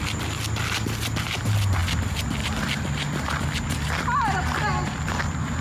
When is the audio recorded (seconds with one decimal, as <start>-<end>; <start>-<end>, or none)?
0.0-5.6